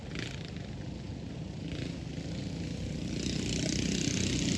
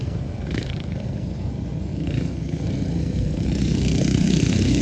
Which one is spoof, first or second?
second